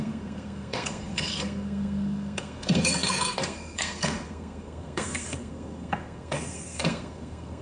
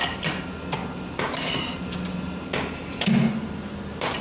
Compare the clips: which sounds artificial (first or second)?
first